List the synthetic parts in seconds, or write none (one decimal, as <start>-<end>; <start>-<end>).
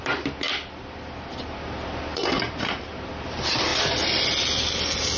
0.5-3.1